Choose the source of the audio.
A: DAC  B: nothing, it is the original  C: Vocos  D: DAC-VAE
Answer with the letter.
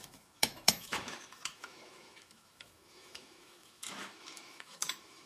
D